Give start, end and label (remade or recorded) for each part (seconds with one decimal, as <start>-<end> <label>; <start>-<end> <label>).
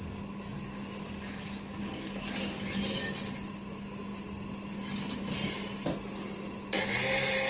0.0-7.5 recorded